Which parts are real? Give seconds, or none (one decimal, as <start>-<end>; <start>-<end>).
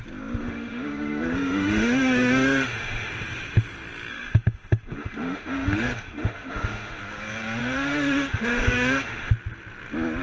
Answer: 0.0-0.4; 3.1-4.1; 7.0-7.6; 9.3-10.2